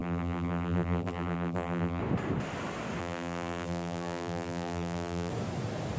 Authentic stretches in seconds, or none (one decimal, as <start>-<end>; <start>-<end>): 2.0-3.0; 5.3-6.0